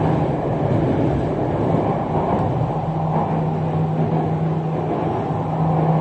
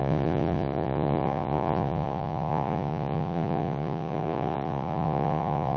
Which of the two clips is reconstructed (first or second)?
second